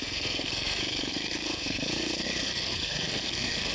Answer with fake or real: fake